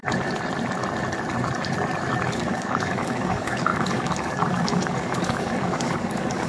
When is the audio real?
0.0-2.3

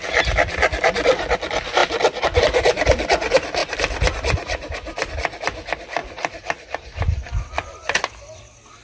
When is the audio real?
0.0-1.8; 2.4-3.6; 5.1-6.0; 8.0-8.8

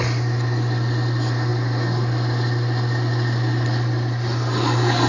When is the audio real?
0.0-5.1

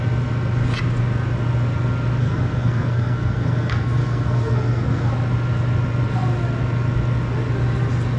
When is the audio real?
0.0-2.2; 5.1-8.2

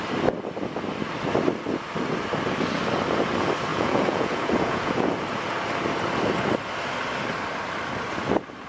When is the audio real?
0.0-3.7; 5.1-8.7

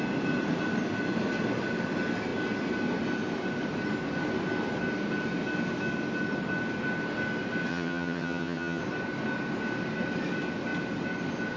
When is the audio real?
0.0-7.7; 8.8-11.6